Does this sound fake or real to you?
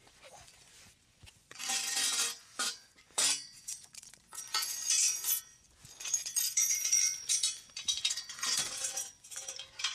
fake